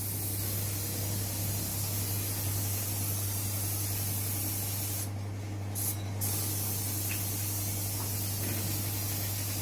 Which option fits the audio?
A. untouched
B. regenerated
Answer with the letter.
A